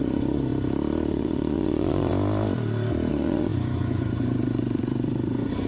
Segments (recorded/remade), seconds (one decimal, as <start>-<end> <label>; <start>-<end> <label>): 0.0-0.5 remade; 0.5-1.1 recorded; 1.1-2.1 remade; 2.1-3.1 recorded; 3.1-5.7 remade